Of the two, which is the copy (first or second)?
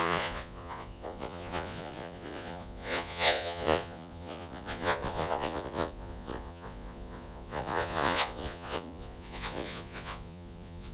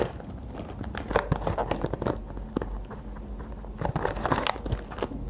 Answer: first